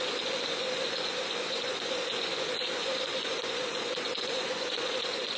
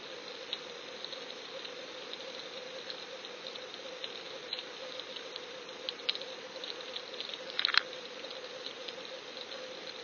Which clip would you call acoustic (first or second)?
second